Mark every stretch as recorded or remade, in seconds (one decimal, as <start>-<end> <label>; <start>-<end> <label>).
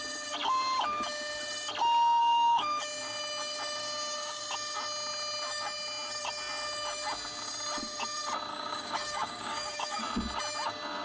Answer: 0.0-2.2 recorded; 2.2-2.8 remade; 2.8-3.8 recorded; 3.8-4.4 remade; 4.4-8.5 recorded; 8.5-10.0 remade; 10.0-11.0 recorded